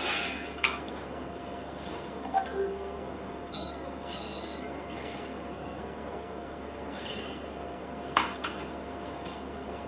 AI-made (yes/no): yes